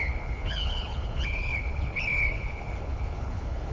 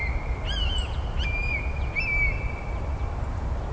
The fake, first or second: first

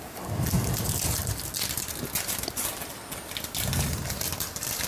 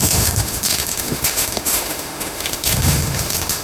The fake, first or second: second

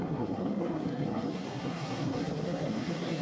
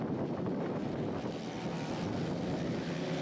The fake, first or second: first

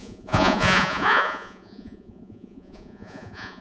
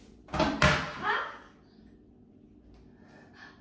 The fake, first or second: first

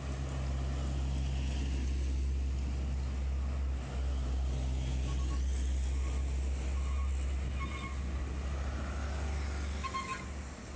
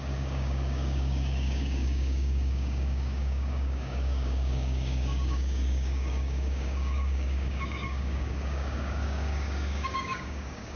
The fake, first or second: second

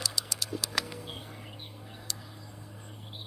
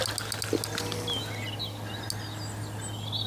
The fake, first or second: first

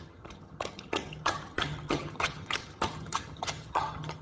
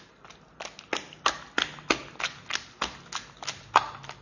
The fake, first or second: first